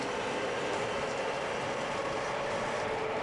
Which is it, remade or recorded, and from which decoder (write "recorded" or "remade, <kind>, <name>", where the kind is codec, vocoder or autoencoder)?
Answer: recorded